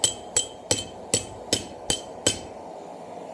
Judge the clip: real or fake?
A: real